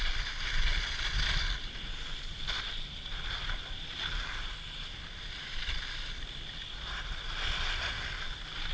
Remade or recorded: recorded